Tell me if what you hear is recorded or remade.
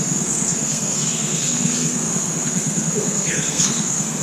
remade